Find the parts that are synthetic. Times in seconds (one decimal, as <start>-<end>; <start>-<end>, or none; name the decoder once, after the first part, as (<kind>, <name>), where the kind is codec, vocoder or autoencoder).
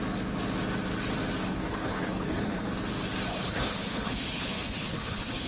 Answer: 1.5-2.7 (codec, HILCodec); 3.3-5.5